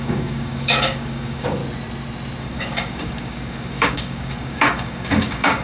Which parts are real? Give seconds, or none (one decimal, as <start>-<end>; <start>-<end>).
1.6-2.4